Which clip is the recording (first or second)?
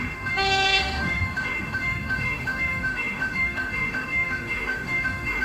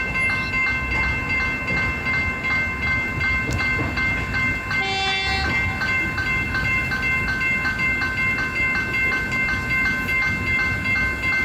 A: second